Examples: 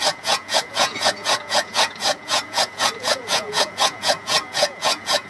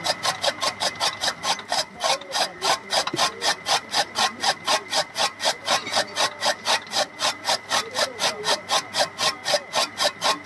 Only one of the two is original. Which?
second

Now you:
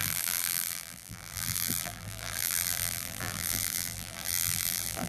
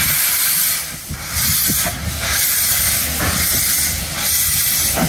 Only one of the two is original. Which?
second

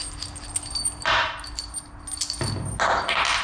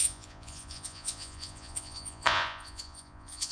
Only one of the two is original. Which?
first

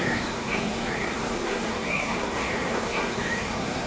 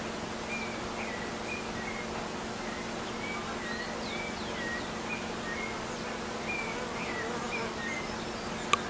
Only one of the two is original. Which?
second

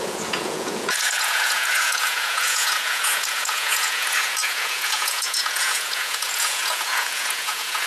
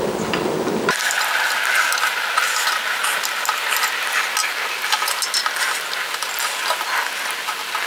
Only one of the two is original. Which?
second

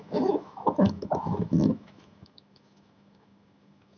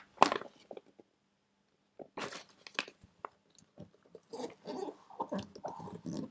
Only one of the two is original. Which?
second